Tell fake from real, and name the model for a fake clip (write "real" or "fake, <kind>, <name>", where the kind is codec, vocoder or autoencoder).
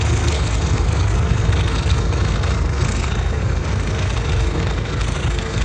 fake, codec, SNAC